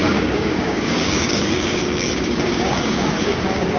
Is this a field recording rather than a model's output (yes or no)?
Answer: no